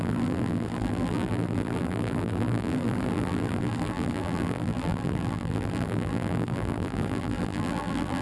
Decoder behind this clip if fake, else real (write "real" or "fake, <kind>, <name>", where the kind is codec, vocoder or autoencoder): fake, vocoder, BigVGAN v2